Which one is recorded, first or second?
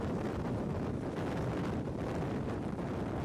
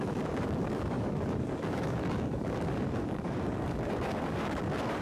first